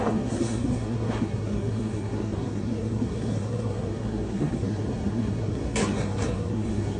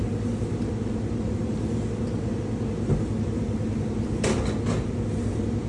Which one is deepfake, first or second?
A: first